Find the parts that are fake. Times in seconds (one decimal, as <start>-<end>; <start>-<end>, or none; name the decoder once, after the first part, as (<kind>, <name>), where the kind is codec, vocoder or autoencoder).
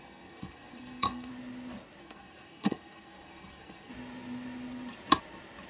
0.0-1.3 (codec, SNAC); 2.0-3.9